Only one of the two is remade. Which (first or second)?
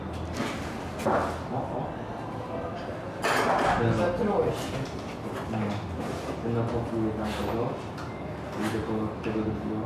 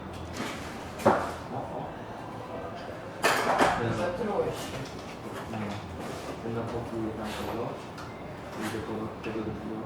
second